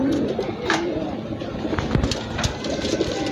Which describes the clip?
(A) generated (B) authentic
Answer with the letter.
B